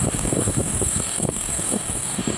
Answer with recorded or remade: remade